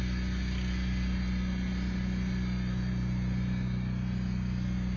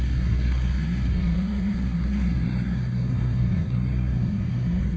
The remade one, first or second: second